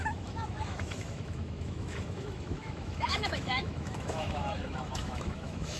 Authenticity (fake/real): fake